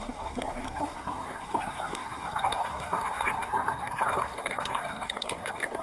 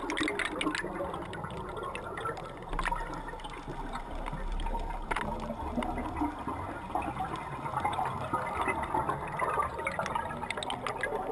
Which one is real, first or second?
second